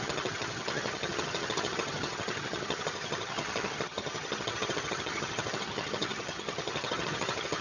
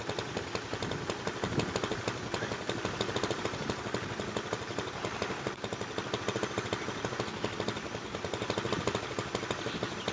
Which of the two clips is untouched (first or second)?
second